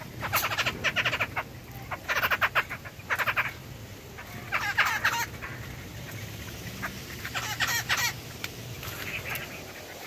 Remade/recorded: recorded